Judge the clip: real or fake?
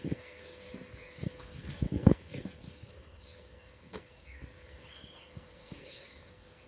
fake